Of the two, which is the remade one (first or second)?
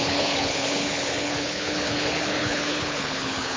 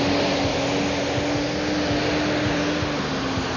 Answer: first